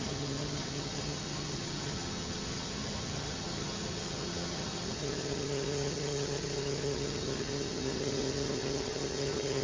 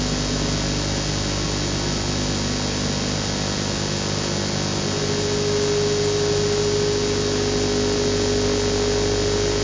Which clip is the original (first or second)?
second